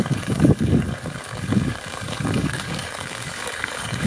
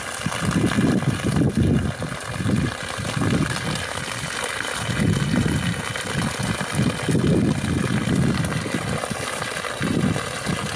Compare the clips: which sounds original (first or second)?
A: second